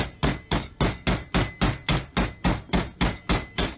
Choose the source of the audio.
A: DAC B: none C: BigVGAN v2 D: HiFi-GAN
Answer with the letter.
B